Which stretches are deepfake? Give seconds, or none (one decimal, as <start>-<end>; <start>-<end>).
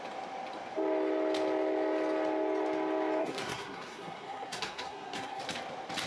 3.2-5.4